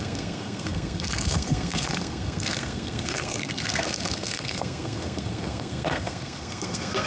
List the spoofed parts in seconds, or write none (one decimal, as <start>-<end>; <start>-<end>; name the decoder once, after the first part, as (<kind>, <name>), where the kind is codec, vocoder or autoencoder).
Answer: 0.0-7.1 (codec, SNAC)